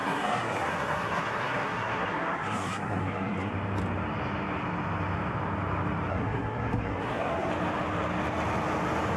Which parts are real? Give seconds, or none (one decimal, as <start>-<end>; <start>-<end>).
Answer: 3.5-6.1; 7.5-9.2